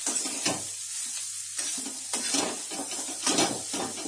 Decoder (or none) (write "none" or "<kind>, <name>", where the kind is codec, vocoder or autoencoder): none